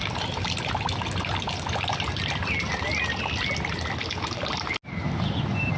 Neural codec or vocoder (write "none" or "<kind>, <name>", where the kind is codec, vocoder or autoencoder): none